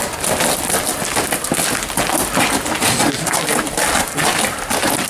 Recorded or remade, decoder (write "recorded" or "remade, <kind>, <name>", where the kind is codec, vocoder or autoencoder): recorded